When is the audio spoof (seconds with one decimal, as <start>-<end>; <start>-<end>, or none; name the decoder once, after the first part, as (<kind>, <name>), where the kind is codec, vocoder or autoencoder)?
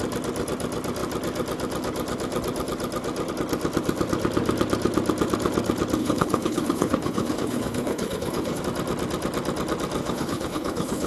6.0-8.6 (codec, HILCodec); 10.0-11.1